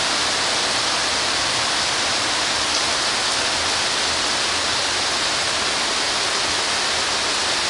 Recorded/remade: recorded